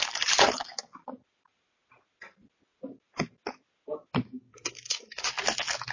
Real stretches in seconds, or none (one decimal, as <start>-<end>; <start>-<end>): 0.0-4.5; 5.3-5.9